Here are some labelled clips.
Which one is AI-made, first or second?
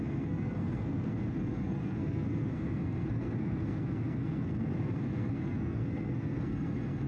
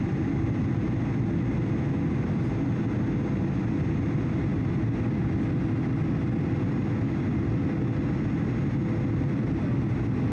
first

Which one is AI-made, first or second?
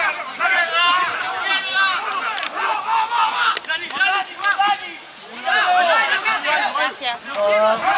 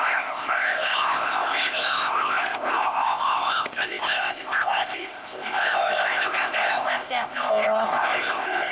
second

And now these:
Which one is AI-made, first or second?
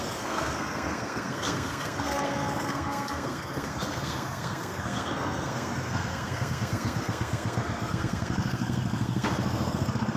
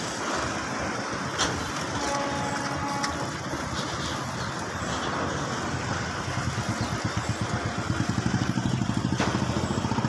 first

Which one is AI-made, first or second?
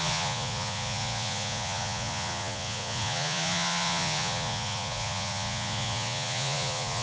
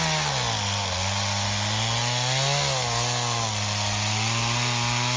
first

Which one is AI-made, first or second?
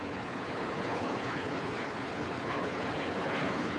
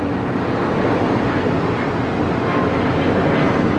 first